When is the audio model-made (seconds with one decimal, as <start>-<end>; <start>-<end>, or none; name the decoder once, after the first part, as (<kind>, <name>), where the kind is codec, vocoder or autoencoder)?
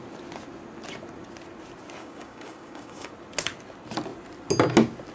2.0-3.1 (codec, DAC)